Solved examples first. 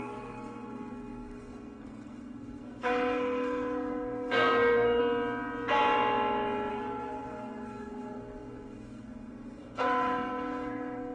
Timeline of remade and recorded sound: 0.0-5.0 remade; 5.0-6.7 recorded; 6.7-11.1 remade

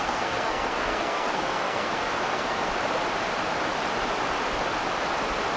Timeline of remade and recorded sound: 0.0-2.7 remade; 2.7-5.6 recorded

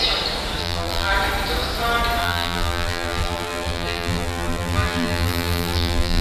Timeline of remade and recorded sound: 0.0-0.6 recorded; 0.6-1.1 remade; 1.1-2.2 recorded; 2.2-6.2 remade

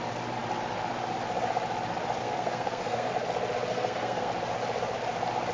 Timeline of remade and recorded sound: 0.0-2.2 recorded; 2.2-3.1 remade; 3.1-3.7 recorded; 3.7-4.3 remade; 4.3-5.5 recorded

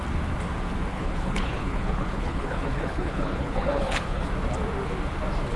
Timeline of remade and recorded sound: 0.0-0.9 recorded; 0.9-4.3 remade; 4.3-5.6 recorded

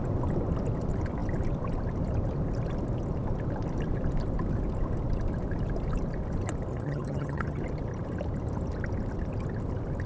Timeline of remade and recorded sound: 0.0-6.7 recorded; 6.7-7.6 remade; 7.6-10.1 recorded

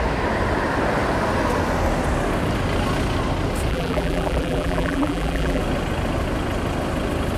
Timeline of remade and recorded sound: 0.0-3.7 recorded; 3.7-5.6 remade; 5.6-7.4 recorded